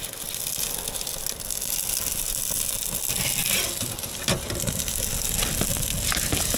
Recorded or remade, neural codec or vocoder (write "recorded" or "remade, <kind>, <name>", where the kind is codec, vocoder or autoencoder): recorded